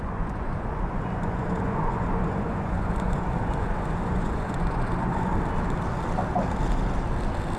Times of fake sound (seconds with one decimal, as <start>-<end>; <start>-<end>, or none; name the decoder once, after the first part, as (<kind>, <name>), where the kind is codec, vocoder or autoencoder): 0.0-5.3 (vocoder, Vocos)